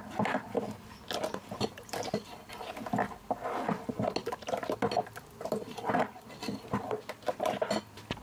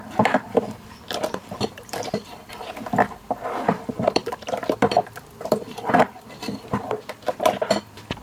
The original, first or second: first